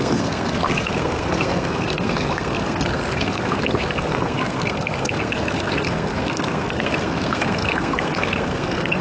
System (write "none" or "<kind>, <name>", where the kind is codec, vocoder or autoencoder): codec, SNAC